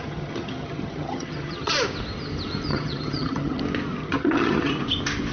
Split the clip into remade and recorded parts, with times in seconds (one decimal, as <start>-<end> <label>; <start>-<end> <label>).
0.0-1.7 remade; 1.7-2.7 recorded; 2.7-3.6 remade; 3.6-4.0 recorded; 4.0-4.7 remade; 4.7-5.3 recorded